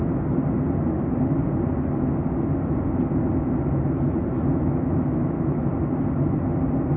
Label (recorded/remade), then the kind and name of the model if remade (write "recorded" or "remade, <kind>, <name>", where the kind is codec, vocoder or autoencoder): recorded